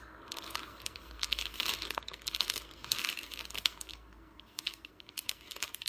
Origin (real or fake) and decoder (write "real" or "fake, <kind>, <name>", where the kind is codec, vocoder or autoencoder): fake, codec, SNAC